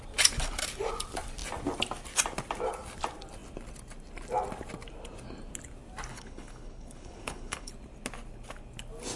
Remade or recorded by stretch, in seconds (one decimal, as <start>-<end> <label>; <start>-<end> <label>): 0.0-6.1 recorded; 6.1-7.7 remade; 7.7-9.2 recorded